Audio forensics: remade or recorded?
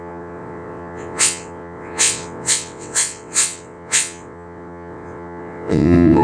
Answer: remade